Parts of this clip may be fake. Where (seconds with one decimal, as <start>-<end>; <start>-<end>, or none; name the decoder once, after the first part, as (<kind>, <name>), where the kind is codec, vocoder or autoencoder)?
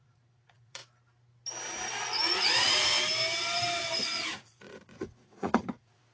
0.0-0.8 (vocoder, Vocos); 2.0-2.9; 4.0-6.1